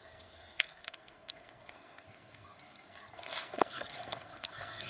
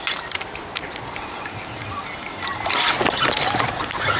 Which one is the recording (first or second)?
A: second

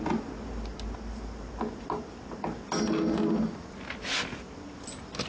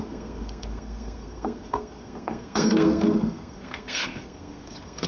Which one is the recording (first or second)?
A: first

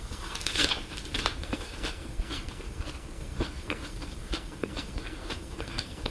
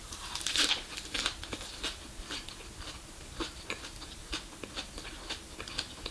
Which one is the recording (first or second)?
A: second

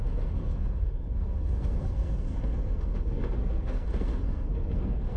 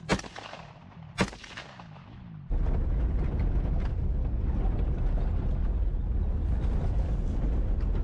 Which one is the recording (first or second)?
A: second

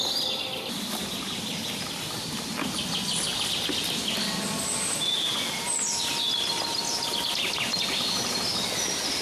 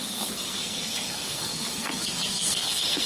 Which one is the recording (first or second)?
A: first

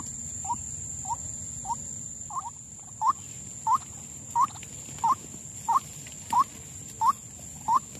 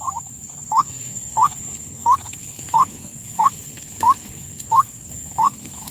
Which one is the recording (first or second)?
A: first